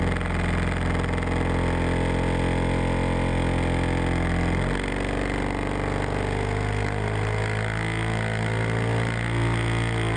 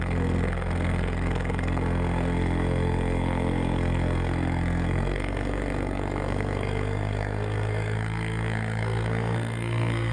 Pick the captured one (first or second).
first